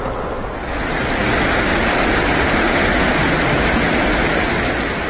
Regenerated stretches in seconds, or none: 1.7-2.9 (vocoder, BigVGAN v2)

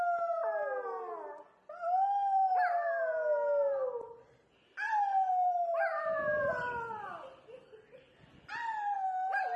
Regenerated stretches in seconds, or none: none